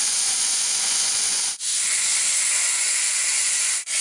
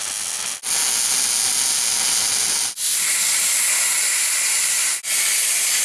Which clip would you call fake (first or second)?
first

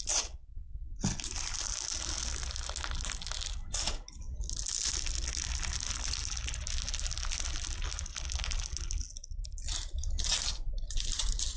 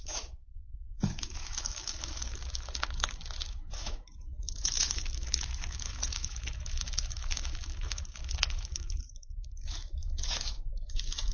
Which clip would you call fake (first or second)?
second